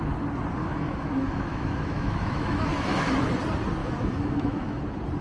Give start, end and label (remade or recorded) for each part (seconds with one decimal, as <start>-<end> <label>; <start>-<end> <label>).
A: 0.0-0.6 recorded; 0.6-3.1 remade; 3.1-3.8 recorded; 3.8-4.8 remade; 4.8-5.2 recorded